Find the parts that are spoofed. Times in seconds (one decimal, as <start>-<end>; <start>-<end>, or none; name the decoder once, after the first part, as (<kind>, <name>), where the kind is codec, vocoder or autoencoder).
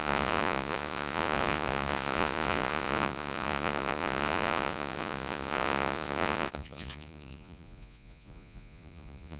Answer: 0.0-9.4 (vocoder, Vocos)